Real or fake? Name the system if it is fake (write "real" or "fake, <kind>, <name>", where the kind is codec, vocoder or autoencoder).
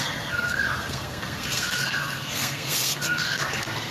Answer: fake, codec, SNAC